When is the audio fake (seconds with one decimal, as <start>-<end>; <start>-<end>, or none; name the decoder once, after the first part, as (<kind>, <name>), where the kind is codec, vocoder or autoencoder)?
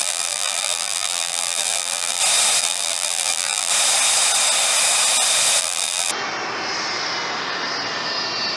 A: 0.0-2.2 (vocoder, BigVGAN v2); 2.6-3.7; 5.6-6.1